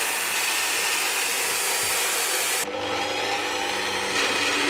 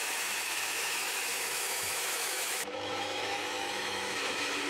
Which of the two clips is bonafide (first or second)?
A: first